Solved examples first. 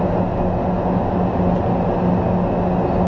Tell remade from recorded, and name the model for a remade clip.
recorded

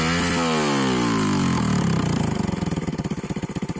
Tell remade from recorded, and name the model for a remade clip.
recorded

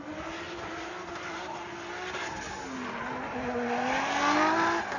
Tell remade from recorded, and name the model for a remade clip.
recorded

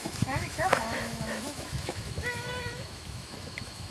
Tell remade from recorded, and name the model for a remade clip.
remade, autoencoder, DAC-VAE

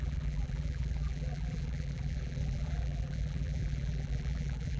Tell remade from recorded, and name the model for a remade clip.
remade, vocoder, BigVGAN v2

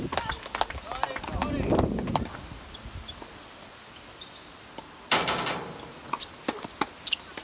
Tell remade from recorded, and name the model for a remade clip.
recorded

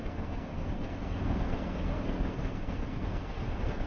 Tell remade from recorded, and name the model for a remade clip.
remade, codec, SNAC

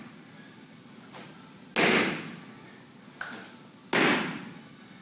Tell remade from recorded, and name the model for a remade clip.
recorded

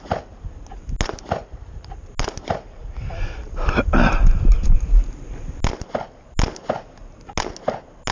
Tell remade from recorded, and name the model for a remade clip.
recorded